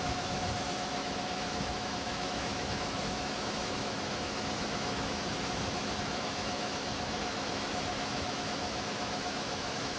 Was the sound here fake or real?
fake